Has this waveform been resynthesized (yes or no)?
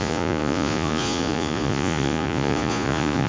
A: yes